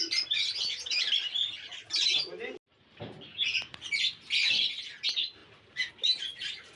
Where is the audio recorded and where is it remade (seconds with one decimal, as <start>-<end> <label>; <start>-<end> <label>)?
0.0-6.8 recorded